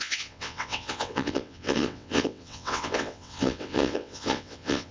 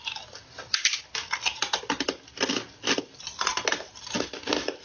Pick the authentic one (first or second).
second